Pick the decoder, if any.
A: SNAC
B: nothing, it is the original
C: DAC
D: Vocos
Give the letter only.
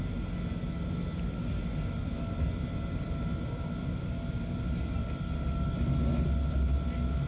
B